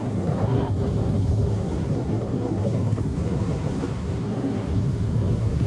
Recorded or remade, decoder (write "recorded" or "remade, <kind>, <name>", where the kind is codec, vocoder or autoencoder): remade, codec, SNAC